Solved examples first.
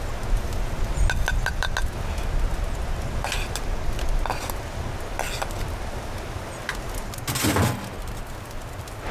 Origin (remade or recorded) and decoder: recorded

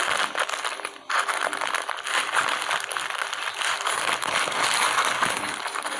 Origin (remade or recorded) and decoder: recorded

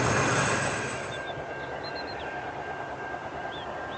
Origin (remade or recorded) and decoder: recorded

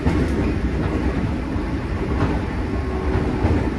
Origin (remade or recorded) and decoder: recorded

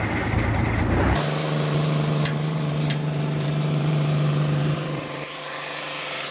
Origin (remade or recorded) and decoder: remade, vocoder, BigVGAN v2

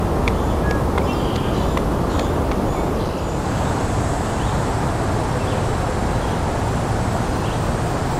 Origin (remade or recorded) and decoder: recorded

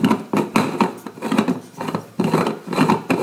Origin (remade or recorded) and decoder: recorded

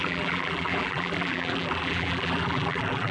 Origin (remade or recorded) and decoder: remade, vocoder, BigVGAN v2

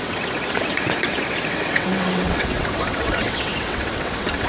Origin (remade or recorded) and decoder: remade, vocoder, WaveNeXt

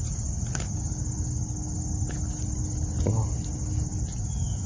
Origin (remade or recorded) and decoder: recorded